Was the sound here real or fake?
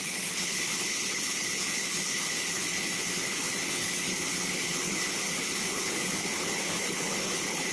fake